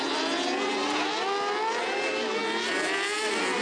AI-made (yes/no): no